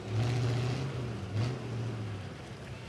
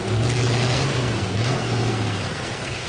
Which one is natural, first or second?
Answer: first